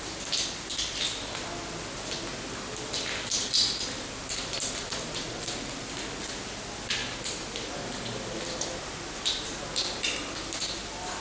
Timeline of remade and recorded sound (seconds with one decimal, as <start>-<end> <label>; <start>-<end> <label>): 0.0-11.2 recorded